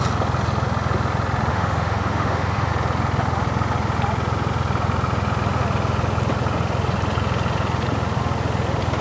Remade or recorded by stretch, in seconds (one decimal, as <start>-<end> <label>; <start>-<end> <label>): 0.0-1.5 recorded; 1.5-2.7 remade; 2.7-9.0 recorded